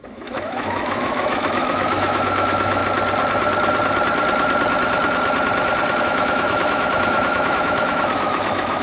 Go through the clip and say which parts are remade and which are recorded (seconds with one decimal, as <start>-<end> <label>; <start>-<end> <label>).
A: 0.0-2.8 remade; 2.8-6.0 recorded; 6.0-8.8 remade